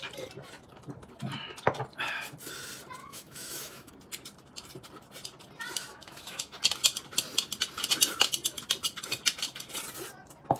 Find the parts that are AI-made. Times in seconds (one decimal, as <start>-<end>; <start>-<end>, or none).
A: 3.0-3.9; 5.9-6.6